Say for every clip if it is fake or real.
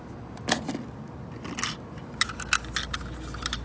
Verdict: real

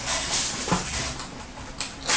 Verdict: real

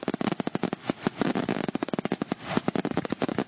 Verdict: real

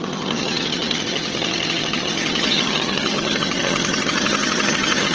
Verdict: fake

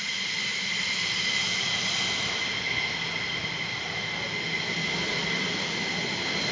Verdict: real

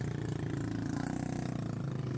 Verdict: real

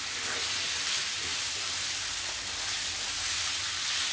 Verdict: real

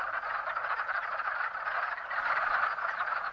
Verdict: real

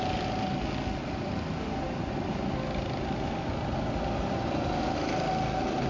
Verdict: real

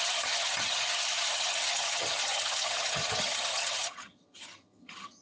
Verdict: fake